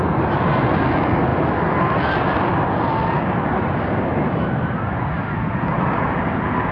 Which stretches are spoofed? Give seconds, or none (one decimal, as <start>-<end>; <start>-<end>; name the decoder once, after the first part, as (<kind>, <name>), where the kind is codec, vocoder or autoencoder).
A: none